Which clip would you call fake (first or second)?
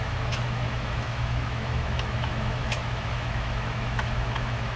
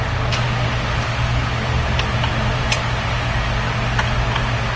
first